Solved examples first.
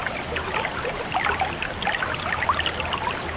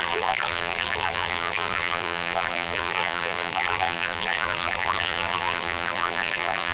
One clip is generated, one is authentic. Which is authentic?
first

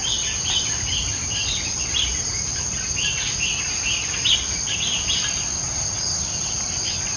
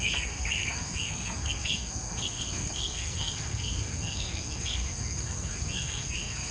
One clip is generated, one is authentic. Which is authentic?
first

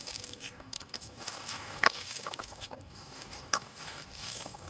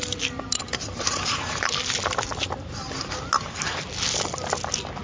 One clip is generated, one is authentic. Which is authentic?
second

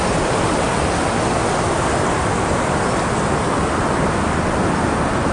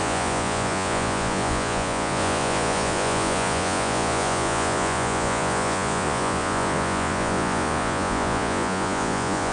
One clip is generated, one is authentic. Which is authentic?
first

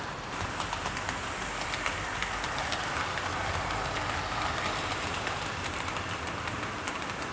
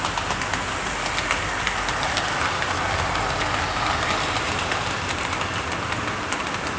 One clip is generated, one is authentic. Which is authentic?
second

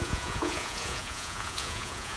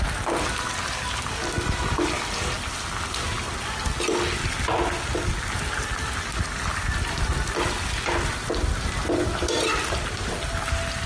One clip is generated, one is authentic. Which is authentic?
second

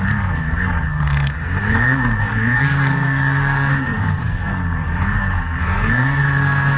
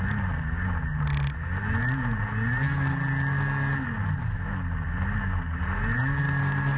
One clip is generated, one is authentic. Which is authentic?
second